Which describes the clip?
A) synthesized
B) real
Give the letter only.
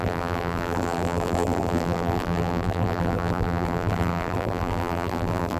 A